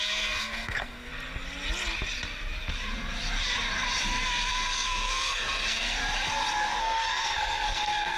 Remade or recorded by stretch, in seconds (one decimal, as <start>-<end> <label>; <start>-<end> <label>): 0.0-1.1 remade; 1.1-4.5 recorded; 4.5-6.0 remade; 6.0-6.8 recorded; 6.8-8.2 remade